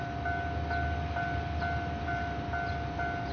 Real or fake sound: real